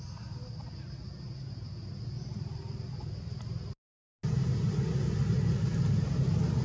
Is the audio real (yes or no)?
yes